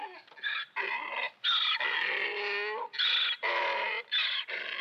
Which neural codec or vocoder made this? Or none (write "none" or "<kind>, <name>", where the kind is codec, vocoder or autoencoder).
none